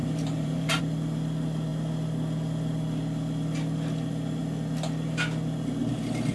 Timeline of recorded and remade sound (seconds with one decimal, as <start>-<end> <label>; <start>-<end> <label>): 0.0-0.8 remade; 0.8-6.3 recorded

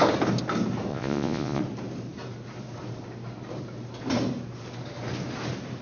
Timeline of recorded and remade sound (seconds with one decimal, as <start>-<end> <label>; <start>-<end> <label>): 0.0-0.9 recorded; 0.9-1.6 remade; 1.6-5.8 recorded

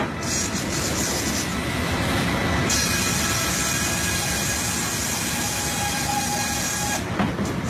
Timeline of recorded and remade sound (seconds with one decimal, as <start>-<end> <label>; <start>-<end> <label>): 0.0-7.7 recorded

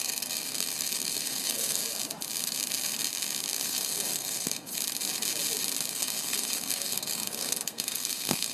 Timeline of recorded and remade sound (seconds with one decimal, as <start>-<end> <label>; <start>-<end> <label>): 0.0-1.8 remade; 1.8-3.5 recorded; 3.5-4.7 remade; 4.7-5.9 recorded; 5.9-8.5 remade

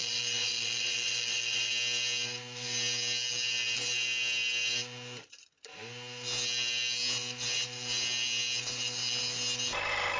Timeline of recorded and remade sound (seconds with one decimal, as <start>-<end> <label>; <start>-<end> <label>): 0.0-1.7 remade; 1.7-10.2 recorded

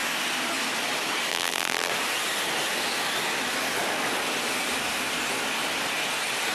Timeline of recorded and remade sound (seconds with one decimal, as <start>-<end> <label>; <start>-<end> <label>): 0.0-1.3 recorded; 1.3-1.9 remade; 1.9-6.5 recorded

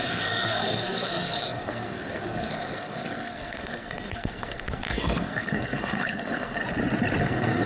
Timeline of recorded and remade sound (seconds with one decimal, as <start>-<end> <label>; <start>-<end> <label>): 0.0-6.6 remade; 6.6-7.2 recorded; 7.2-7.7 remade

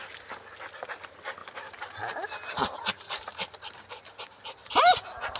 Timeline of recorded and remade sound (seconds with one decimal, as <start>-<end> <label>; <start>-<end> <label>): 0.0-5.4 recorded